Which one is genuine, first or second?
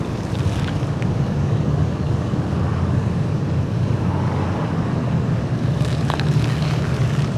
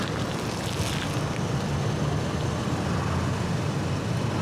second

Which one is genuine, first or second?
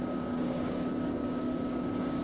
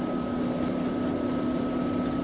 second